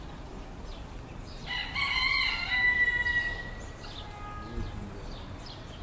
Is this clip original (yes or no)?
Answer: yes